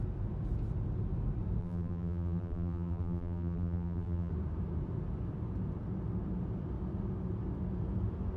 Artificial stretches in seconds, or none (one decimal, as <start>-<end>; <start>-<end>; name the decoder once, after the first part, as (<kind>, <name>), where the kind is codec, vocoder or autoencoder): 1.6-4.3 (vocoder, BigVGAN v2)

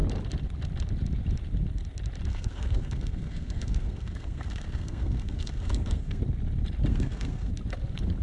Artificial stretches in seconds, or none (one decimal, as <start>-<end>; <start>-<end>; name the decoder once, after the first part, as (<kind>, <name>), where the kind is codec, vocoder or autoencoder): 2.3-6.2 (codec, SNAC); 6.9-7.5